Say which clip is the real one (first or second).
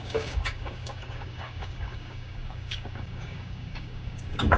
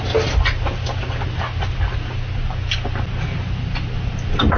second